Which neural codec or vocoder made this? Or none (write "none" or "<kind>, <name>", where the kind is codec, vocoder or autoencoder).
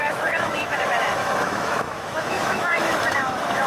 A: autoencoder, DAC-VAE